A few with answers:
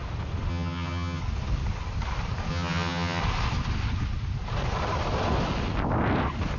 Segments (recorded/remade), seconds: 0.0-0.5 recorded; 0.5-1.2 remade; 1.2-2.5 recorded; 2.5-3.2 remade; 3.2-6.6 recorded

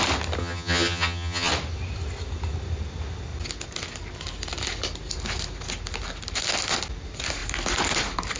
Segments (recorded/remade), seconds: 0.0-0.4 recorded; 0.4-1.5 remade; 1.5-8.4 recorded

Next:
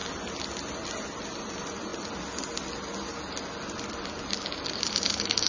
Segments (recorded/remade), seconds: 0.0-1.5 recorded; 1.5-1.9 remade; 1.9-4.7 recorded; 4.7-5.5 remade